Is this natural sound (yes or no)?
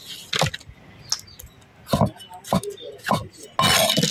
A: yes